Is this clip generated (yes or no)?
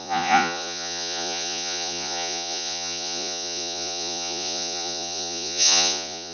yes